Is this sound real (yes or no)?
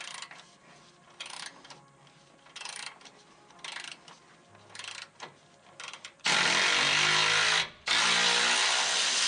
yes